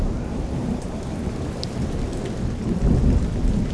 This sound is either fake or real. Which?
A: real